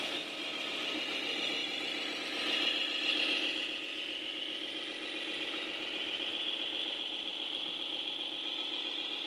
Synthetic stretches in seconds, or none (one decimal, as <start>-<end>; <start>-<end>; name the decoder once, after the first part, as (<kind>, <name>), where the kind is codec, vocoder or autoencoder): none